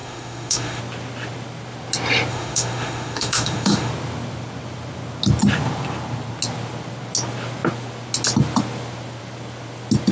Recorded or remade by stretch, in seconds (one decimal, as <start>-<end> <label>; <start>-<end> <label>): 0.0-0.8 remade; 0.8-2.3 recorded; 2.3-3.9 remade; 3.9-10.1 recorded